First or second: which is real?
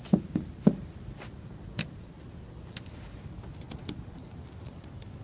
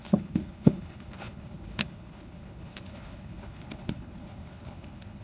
first